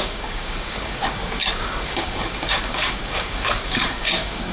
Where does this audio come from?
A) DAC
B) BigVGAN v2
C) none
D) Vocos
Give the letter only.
A